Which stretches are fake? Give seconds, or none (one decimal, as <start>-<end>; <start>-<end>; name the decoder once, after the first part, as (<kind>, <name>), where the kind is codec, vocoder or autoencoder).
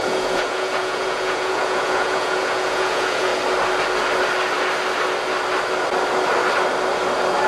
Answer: 0.0-3.3 (vocoder, Vocos)